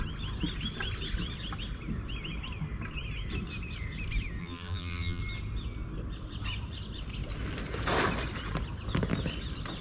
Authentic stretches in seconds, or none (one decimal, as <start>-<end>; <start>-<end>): 0.0-4.4; 5.2-9.8